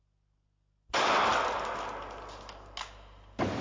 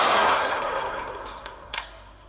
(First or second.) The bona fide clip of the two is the first